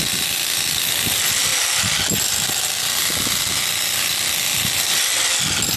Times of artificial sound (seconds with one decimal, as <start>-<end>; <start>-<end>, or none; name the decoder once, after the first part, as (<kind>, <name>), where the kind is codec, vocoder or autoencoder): none